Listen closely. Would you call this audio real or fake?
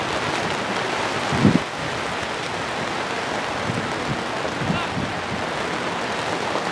real